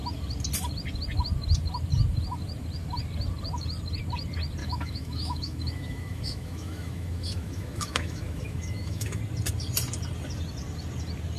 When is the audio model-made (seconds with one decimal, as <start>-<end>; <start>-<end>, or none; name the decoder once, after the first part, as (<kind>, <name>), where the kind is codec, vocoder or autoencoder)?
4.6-9.2 (autoencoder, DAC-VAE)